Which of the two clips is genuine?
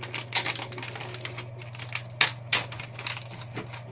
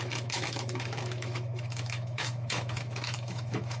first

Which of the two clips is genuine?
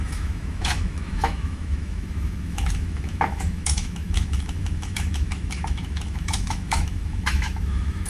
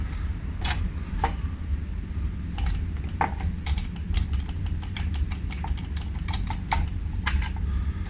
second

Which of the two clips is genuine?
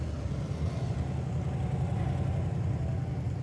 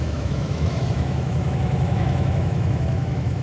first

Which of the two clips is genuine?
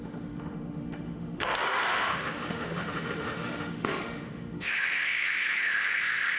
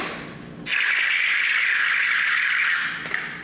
second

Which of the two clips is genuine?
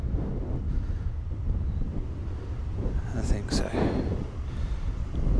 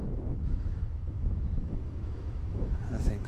first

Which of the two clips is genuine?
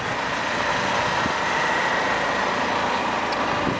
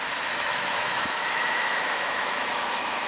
first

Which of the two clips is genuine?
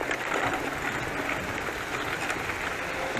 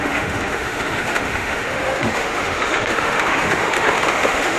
first